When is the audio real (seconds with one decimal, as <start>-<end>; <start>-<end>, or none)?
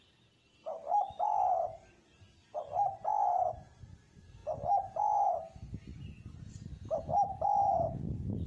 0.0-8.5